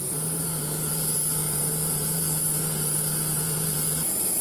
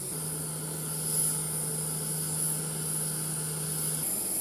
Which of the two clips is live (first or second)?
second